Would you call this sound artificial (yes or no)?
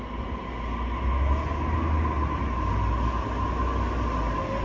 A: no